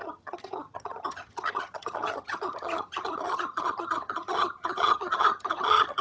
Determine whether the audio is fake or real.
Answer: fake